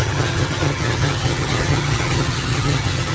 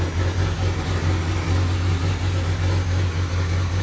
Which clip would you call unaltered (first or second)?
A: second